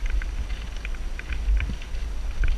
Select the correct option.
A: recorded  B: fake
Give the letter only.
A